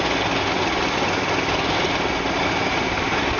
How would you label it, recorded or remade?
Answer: recorded